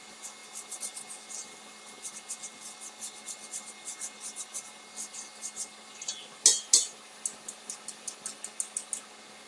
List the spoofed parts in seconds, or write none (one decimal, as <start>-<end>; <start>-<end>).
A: none